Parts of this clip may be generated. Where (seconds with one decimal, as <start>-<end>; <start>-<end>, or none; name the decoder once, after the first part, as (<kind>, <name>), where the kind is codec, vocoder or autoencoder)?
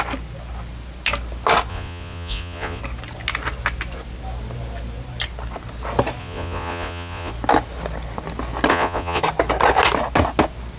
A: 1.7-2.8 (vocoder, Vocos); 6.2-7.3; 8.7-9.2